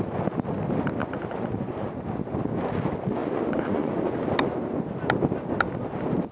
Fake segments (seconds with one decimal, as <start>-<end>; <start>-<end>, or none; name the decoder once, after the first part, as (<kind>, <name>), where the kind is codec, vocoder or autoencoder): 1.0-1.9 (vocoder, Vocos); 3.2-4.2